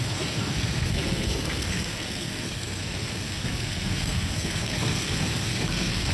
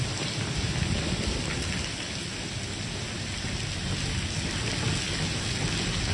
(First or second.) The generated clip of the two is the first